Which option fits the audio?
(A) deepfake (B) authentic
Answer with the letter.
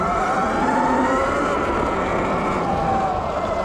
B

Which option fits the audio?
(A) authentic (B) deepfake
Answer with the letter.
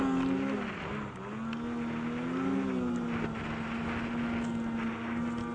A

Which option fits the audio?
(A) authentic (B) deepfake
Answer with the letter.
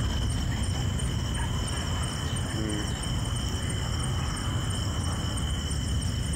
A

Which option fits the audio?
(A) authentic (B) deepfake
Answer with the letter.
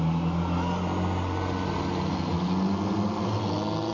A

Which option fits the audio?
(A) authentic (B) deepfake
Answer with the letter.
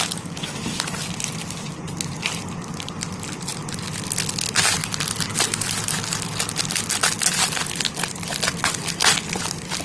A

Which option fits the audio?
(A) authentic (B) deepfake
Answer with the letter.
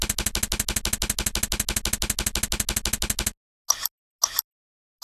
A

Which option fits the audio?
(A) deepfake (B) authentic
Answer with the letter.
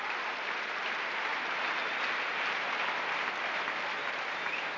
B